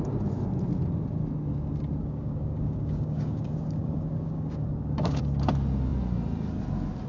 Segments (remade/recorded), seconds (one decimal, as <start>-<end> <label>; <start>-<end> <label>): 0.0-2.0 recorded; 2.0-5.2 remade; 5.2-7.1 recorded